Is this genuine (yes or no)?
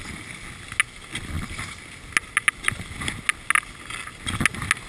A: yes